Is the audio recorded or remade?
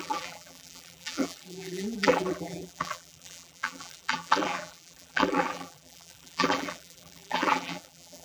remade